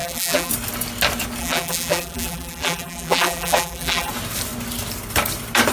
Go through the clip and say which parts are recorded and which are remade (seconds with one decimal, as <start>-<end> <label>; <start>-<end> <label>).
0.0-0.5 remade; 0.5-1.4 recorded; 1.4-4.1 remade; 4.1-5.7 recorded